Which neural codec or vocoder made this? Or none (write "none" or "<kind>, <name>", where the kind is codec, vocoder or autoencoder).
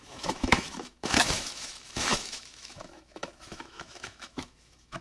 autoencoder, DAC-VAE